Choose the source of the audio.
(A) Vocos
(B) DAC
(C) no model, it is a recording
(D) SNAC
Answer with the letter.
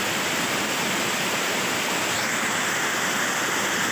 C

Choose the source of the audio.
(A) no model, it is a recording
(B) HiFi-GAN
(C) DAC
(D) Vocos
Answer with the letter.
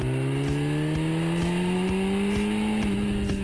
A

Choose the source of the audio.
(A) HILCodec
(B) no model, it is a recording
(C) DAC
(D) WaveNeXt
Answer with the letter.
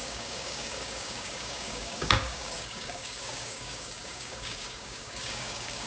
C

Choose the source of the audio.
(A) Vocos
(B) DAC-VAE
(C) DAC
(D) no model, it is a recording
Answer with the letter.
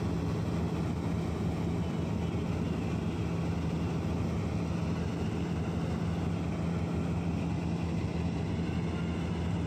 D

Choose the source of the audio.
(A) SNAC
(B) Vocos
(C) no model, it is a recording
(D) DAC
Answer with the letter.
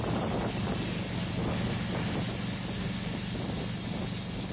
C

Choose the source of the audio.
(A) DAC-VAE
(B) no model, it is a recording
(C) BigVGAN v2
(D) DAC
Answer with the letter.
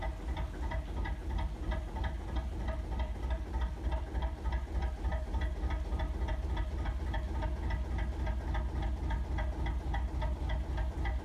B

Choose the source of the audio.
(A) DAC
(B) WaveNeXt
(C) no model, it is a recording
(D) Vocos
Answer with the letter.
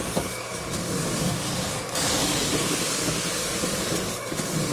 A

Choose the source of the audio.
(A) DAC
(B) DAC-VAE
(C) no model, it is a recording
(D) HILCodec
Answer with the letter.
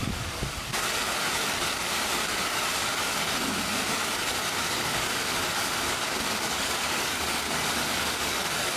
A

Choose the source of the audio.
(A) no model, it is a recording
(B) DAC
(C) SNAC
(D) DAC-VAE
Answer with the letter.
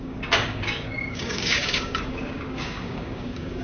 B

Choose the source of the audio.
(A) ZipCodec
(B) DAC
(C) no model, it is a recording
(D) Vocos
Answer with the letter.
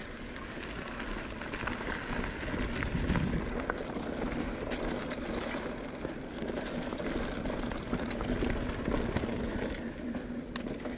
C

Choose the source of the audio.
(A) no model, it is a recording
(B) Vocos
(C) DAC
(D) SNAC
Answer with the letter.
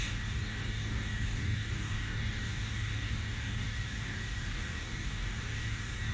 C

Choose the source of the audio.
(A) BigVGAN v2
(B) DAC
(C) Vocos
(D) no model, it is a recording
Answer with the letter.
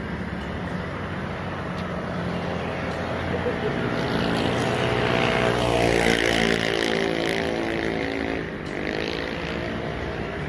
D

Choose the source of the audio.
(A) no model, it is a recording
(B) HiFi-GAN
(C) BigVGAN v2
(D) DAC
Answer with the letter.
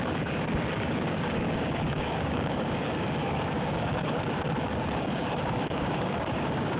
D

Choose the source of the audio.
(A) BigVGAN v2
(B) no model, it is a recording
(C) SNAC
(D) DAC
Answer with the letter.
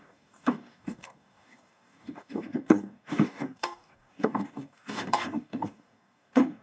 D